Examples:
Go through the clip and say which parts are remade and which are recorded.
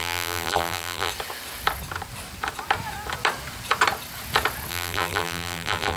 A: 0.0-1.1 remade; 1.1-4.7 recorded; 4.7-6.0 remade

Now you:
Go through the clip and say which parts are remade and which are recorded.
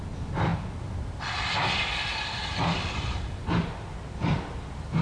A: 0.0-5.0 recorded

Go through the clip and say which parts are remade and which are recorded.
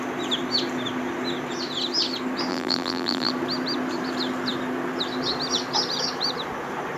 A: 0.0-2.5 recorded; 2.5-3.3 remade; 3.3-7.0 recorded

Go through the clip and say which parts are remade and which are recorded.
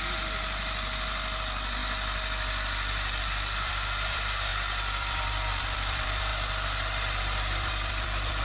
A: 0.0-1.8 remade; 1.8-3.2 recorded; 3.2-6.3 remade; 6.3-7.2 recorded; 7.2-8.4 remade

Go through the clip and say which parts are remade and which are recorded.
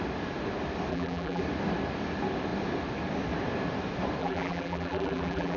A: 0.0-0.9 recorded; 0.9-1.4 remade; 1.4-4.2 recorded; 4.2-5.6 remade